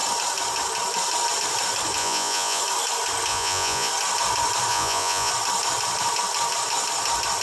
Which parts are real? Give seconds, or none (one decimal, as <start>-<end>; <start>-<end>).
0.0-2.0; 2.6-3.3; 3.9-4.7; 5.3-7.4